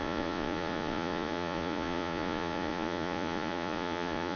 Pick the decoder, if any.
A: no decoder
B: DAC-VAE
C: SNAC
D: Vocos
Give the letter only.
D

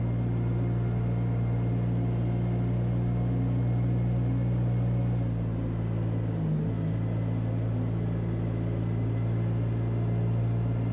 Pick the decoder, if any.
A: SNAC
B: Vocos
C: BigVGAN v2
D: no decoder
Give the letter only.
D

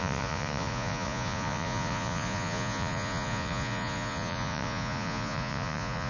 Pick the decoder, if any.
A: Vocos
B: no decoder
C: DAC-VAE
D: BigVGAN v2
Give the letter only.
A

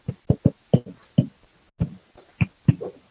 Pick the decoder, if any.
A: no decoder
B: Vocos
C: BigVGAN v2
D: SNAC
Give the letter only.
A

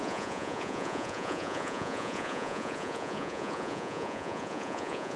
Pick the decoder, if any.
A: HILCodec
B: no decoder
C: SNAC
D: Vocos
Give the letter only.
D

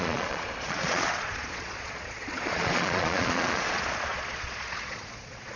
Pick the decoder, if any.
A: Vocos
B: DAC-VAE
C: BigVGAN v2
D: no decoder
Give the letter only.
A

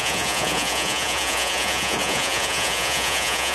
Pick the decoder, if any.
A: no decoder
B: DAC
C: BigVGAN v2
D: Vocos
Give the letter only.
D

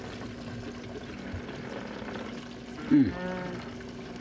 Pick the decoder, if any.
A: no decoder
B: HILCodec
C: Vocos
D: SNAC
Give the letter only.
A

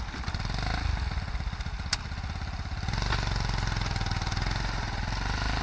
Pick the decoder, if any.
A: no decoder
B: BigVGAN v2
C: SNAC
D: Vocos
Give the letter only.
A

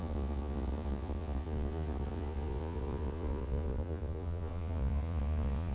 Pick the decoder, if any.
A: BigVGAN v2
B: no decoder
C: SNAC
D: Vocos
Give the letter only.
D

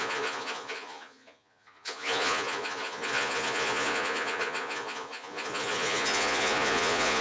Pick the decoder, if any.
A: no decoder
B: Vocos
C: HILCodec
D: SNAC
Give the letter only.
B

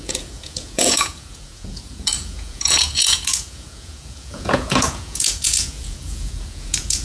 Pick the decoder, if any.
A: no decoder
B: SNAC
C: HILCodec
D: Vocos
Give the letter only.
D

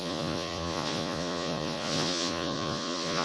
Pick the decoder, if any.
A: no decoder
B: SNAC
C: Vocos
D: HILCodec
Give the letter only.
C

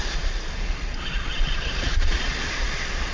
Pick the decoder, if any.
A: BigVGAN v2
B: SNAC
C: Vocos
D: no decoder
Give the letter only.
C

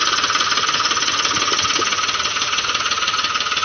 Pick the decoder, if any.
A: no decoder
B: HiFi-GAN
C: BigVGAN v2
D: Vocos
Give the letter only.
D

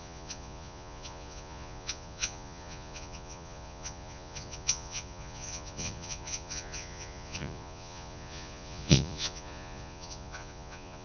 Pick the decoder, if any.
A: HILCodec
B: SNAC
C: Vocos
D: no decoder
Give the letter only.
C